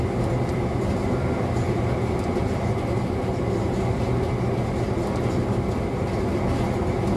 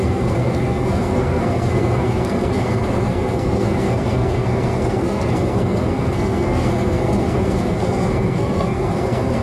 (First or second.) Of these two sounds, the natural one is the first